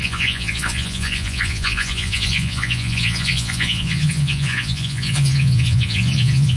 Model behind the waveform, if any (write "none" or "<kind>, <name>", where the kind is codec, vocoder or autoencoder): vocoder, Vocos